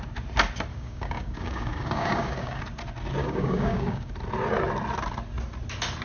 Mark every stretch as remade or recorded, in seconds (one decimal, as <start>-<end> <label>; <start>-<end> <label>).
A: 0.0-0.7 recorded; 0.7-2.6 remade; 2.6-3.2 recorded; 3.2-4.1 remade; 4.1-6.0 recorded